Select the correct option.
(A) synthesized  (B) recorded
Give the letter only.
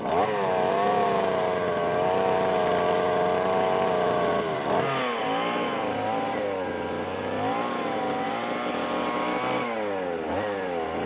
B